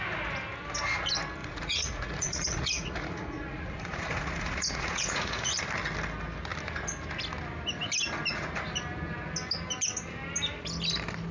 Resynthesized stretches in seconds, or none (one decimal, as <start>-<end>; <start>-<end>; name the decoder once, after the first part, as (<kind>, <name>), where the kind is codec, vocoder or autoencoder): 1.4-5.6 (vocoder, Vocos)